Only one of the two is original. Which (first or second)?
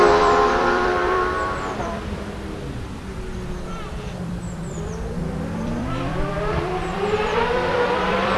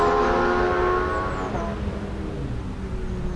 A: second